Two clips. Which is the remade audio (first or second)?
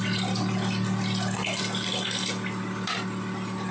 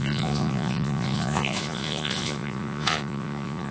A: second